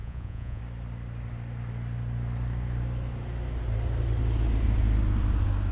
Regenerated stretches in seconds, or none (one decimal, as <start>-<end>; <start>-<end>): 0.0-0.6